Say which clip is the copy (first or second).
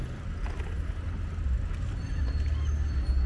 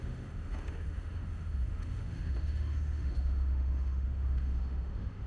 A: second